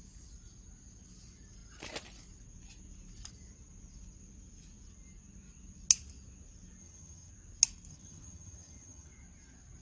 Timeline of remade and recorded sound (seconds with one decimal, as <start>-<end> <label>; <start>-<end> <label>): 0.0-6.8 recorded; 6.8-7.3 remade; 7.3-7.9 recorded; 7.9-9.1 remade; 9.1-9.8 recorded